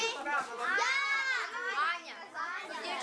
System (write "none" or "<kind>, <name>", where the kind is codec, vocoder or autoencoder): none